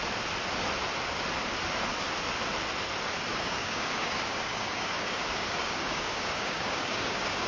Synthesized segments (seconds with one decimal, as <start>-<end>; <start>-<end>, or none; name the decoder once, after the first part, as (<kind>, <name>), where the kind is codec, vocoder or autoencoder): 3.3-7.5 (codec, DAC)